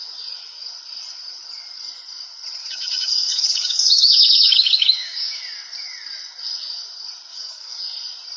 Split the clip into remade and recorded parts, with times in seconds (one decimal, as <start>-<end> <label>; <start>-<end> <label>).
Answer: 0.0-2.6 recorded; 2.6-5.4 remade; 5.4-7.3 recorded; 7.3-7.8 remade; 7.8-8.4 recorded